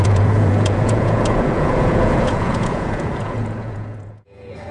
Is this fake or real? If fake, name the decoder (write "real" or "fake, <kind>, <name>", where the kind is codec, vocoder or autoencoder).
fake, vocoder, Vocos